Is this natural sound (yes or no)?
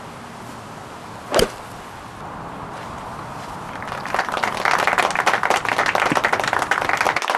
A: yes